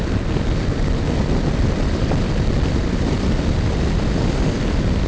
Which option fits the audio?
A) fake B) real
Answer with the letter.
B